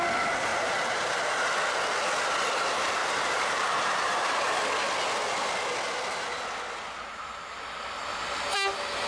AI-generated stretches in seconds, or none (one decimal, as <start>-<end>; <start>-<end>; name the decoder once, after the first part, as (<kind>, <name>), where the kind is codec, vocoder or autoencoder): 0.5-1.2 (vocoder, BigVGAN v2); 3.0-4.1